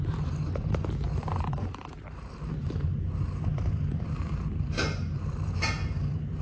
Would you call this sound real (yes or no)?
yes